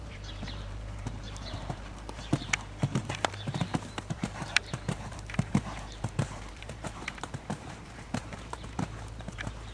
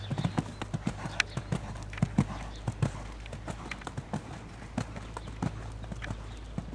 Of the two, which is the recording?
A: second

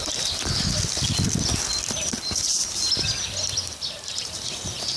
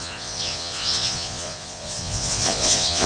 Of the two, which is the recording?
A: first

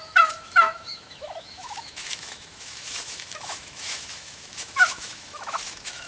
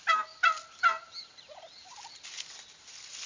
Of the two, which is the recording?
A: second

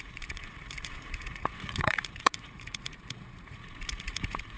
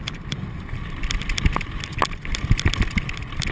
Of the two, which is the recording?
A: second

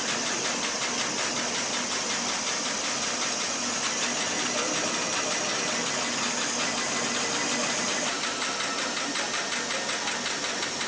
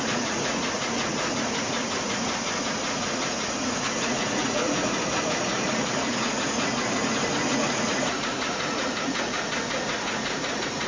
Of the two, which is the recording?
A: first